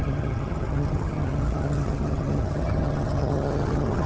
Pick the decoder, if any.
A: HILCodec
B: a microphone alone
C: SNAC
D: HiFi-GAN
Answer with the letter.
D